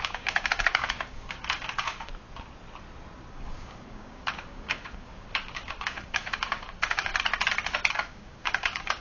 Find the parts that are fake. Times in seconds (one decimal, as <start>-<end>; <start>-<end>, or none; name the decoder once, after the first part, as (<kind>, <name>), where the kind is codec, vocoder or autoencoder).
0.0-2.1 (codec, DAC); 3.3-7.1; 7.9-9.0